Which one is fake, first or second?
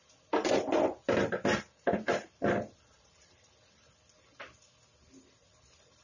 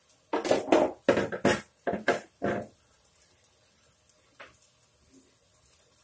first